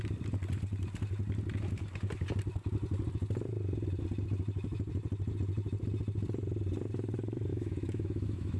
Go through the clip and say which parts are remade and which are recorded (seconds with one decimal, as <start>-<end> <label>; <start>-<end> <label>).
0.0-7.5 recorded; 7.5-8.6 remade